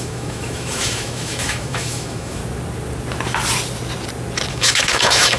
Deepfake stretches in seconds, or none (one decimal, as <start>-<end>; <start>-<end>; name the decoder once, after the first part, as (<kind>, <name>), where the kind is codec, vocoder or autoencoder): 0.0-2.4 (autoencoder, DAC-VAE); 4.5-5.4